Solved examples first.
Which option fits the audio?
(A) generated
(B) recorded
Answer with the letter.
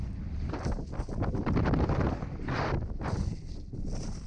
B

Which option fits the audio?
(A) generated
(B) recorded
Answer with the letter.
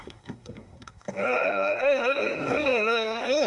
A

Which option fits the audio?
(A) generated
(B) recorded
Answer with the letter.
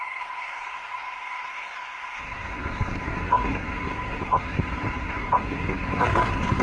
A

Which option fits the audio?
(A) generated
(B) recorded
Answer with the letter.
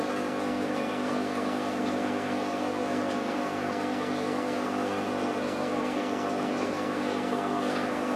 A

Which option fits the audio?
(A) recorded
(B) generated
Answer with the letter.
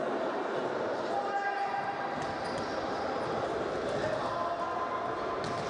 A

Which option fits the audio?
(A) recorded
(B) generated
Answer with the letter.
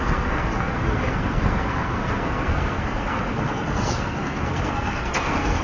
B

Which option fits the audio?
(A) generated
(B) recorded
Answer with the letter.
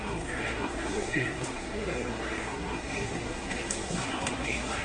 A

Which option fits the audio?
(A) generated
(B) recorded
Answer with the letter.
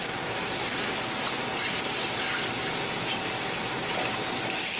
B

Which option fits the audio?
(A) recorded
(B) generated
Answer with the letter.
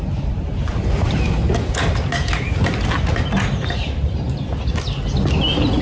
A